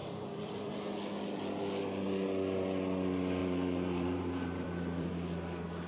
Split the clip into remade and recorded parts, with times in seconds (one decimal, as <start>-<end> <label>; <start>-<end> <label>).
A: 0.0-0.7 remade; 0.7-3.4 recorded; 3.4-5.1 remade; 5.1-5.9 recorded